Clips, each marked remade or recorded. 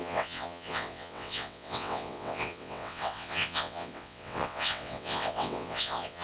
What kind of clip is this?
remade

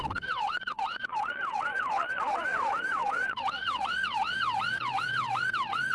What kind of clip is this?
remade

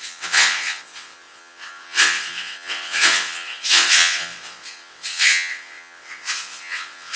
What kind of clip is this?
remade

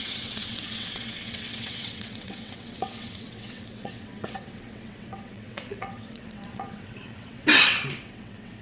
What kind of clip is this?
remade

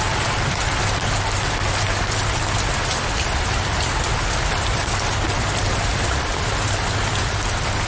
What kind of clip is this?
recorded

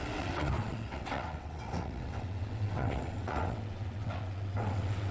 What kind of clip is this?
remade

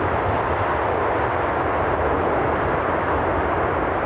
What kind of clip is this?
recorded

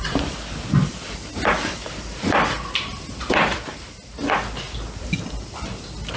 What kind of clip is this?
recorded